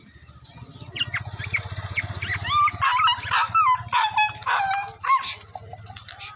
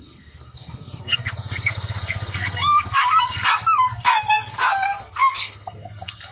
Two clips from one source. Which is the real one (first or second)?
first